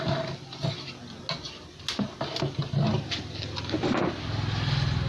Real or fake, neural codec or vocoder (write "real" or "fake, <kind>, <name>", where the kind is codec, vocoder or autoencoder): real